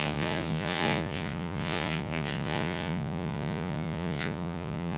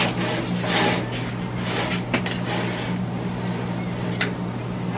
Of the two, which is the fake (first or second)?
first